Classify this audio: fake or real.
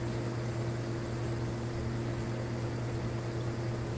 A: real